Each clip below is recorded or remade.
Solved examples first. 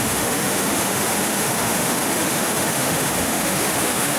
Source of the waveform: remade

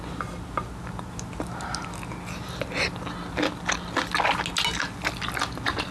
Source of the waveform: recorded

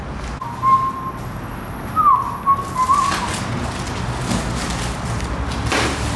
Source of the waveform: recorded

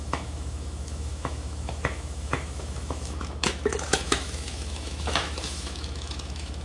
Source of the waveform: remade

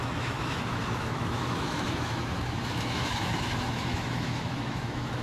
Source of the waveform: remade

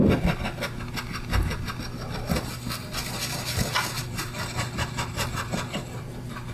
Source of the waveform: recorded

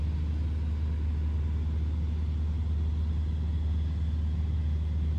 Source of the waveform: recorded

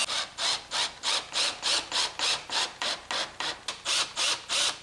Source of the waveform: recorded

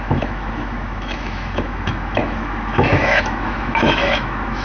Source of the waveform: remade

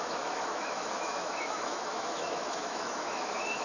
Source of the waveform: remade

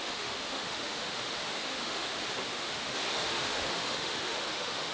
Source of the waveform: remade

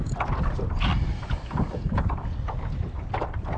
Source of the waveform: recorded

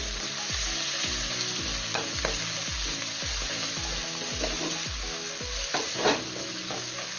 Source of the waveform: recorded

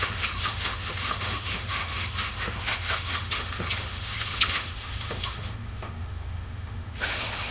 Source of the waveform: remade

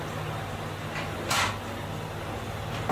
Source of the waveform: recorded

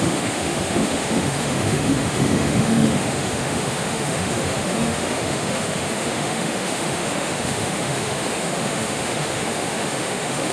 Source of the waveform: remade